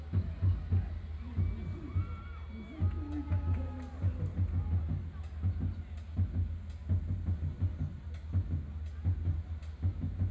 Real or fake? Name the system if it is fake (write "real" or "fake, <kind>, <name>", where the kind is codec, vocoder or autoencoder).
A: real